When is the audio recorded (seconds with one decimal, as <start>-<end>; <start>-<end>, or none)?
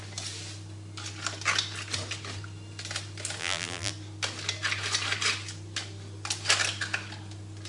0.0-3.4; 3.9-7.7